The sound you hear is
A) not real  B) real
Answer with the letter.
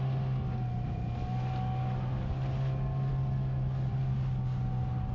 B